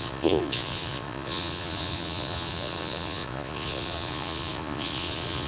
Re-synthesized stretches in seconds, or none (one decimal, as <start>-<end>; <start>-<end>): 0.0-5.5